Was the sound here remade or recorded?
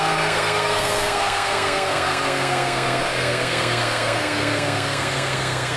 remade